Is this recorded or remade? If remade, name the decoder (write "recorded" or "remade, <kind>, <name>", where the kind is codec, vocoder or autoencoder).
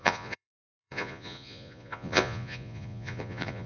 remade, vocoder, Vocos